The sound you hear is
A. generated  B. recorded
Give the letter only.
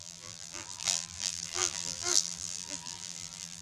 A